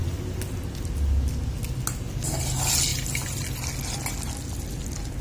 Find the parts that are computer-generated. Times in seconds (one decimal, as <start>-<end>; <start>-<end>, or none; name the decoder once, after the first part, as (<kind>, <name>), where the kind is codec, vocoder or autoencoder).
none